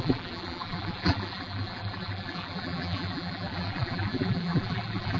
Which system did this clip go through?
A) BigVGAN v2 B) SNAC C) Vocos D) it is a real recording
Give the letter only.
A